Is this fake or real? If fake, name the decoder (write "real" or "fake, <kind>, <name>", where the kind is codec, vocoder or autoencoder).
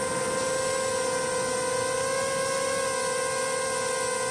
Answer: real